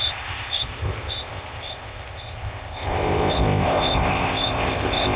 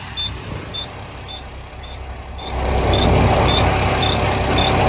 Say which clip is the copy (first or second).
first